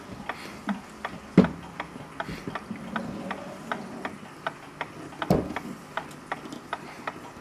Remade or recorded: recorded